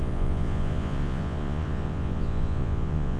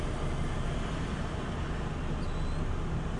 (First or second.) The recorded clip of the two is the second